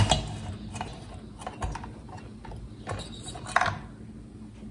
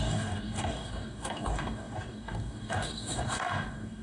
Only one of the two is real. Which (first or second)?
first